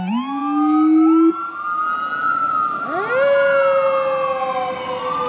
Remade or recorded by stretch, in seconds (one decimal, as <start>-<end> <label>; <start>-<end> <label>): 0.0-5.3 recorded